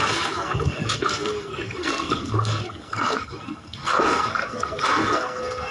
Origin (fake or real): fake